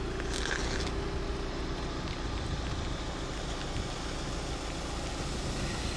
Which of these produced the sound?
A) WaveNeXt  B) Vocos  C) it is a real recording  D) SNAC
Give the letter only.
C